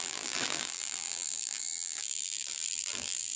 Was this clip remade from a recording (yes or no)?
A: yes